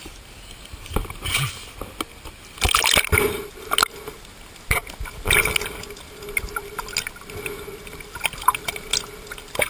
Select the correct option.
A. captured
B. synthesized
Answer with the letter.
A